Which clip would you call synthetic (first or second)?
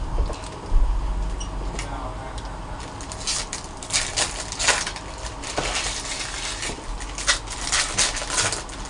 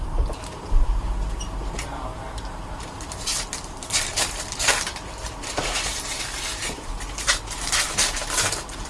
second